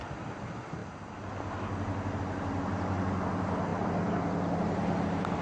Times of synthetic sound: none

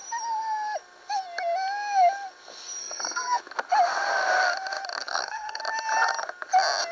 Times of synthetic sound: 2.8-3.4; 5.0-5.6

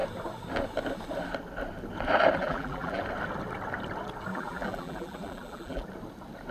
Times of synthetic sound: 2.4-3.0; 4.3-5.8

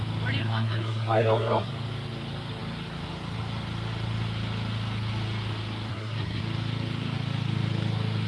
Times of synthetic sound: 0.4-1.7; 5.9-6.4

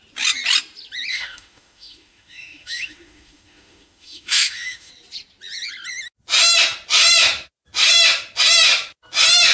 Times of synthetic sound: 1.1-4.9

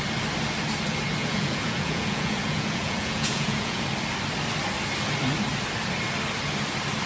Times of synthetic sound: 1.2-3.8

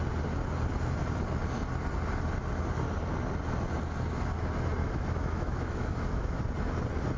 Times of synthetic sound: 4.8-6.4

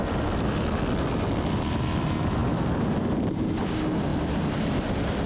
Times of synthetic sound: 4.1-4.6